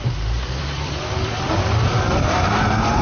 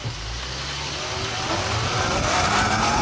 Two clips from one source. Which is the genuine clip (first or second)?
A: second